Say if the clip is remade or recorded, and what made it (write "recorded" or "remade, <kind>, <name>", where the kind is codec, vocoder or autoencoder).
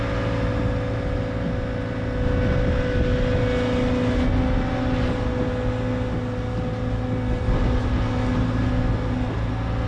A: recorded